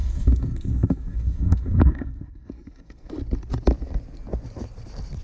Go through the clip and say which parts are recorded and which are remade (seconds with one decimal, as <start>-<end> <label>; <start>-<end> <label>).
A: 0.0-3.1 remade; 3.1-5.2 recorded